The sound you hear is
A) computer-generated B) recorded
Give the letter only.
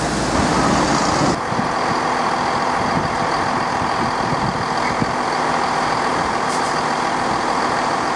B